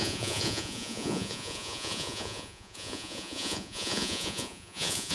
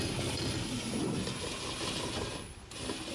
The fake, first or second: first